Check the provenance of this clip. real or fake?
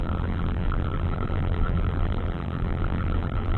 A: fake